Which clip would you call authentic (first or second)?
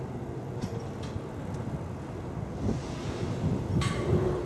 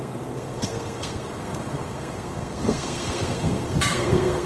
first